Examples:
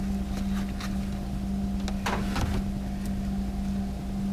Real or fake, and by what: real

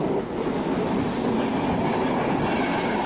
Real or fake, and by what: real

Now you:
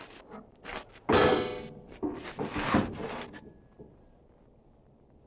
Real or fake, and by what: real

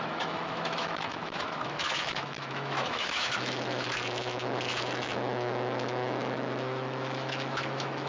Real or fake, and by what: fake, autoencoder, DAC-VAE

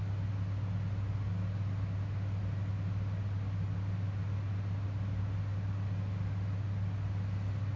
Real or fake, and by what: real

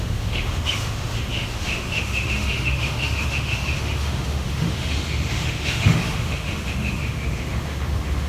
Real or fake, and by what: fake, autoencoder, DAC-VAE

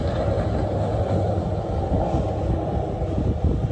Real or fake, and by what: real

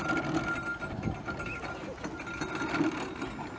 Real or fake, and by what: real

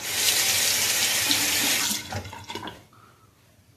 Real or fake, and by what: real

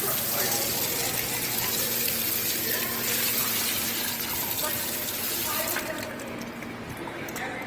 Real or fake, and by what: real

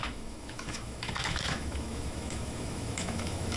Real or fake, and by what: fake, autoencoder, DAC-VAE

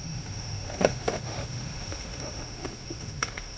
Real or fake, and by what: fake, autoencoder, DAC-VAE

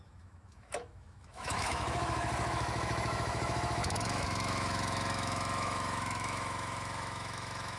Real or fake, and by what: fake, autoencoder, DAC-VAE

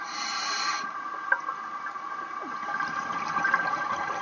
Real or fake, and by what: real